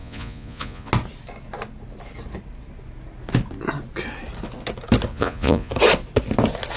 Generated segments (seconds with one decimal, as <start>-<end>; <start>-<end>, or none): 0.0-0.9; 5.1-5.7

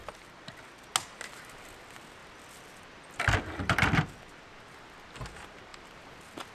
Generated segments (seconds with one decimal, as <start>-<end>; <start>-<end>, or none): 0.0-0.6; 2.2-3.9; 5.7-6.5

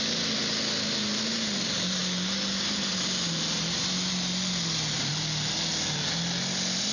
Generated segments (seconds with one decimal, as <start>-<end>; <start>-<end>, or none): none

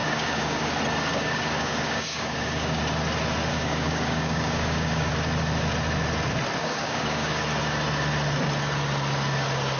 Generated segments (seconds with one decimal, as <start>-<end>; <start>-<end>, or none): 0.0-0.7; 1.1-2.8; 3.5-5.1; 6.6-7.4

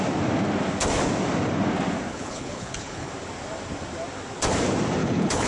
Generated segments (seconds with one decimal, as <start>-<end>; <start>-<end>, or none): 2.1-3.1; 5.0-5.5

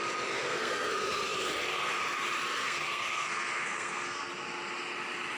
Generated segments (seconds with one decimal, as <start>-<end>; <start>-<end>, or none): 0.4-0.9; 2.6-4.3